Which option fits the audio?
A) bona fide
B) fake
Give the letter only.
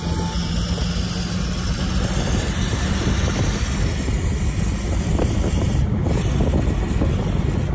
A